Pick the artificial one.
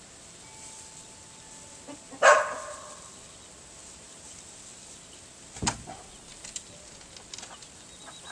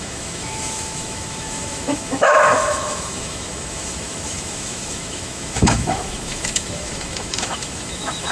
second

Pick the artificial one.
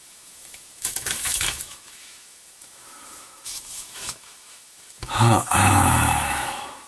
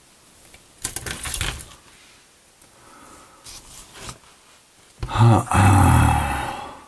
first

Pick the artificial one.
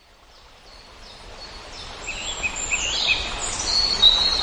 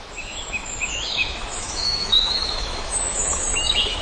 second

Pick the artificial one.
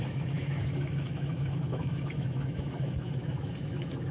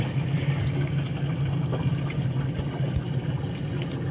first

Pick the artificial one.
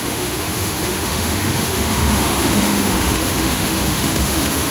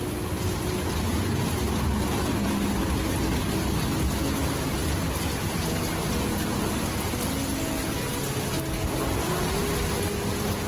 first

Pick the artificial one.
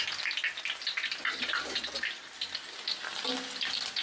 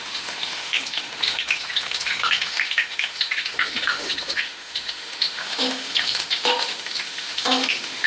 second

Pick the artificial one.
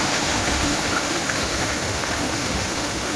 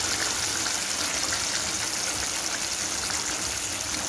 first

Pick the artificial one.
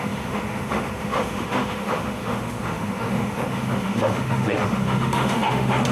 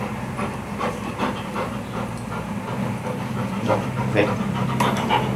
first